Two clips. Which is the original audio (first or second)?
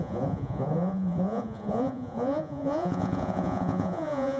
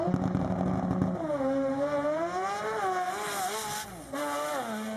second